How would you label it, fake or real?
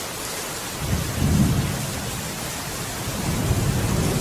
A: real